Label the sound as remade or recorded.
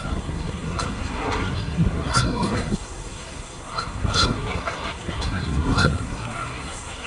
remade